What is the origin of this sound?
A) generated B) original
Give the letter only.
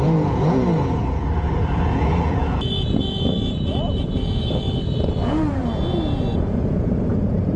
A